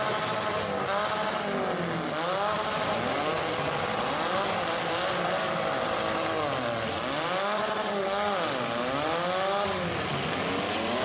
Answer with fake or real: real